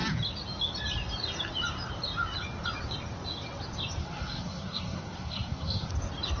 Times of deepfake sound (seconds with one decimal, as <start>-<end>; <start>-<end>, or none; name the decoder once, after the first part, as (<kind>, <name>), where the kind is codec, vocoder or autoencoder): 4.0-5.9 (codec, SNAC)